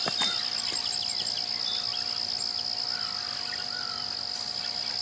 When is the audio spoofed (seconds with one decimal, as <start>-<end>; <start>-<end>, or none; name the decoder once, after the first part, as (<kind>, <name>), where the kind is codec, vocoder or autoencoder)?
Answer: none